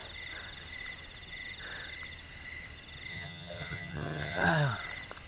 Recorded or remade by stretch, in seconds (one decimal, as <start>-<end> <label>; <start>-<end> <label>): 0.0-3.1 recorded; 3.1-4.4 remade; 4.4-5.3 recorded